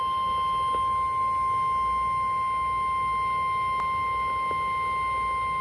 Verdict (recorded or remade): recorded